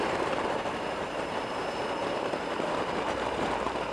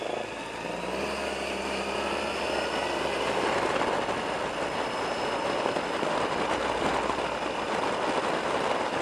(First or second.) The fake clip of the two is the first